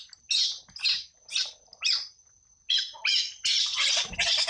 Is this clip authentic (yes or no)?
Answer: yes